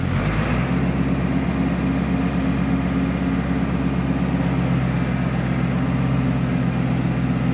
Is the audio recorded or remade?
recorded